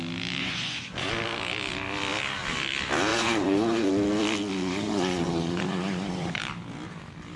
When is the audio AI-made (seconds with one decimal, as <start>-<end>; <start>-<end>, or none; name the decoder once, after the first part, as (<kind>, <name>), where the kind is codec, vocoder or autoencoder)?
0.4-1.1 (vocoder, Vocos); 3.1-3.9; 4.6-6.4